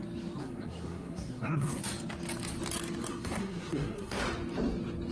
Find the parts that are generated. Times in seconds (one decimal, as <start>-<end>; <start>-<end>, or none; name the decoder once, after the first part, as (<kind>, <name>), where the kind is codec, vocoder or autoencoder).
0.4-1.8 (codec, SNAC); 3.1-4.2